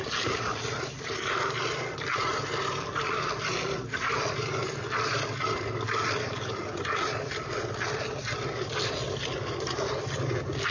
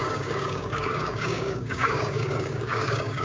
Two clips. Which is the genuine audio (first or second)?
first